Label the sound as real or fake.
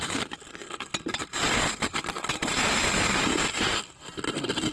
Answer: real